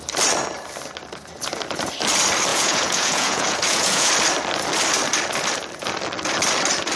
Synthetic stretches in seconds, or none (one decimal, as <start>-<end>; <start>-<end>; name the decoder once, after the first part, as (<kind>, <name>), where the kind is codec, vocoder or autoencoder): 2.5-4.1 (vocoder, Vocos)